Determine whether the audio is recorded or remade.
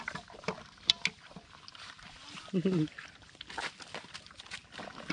recorded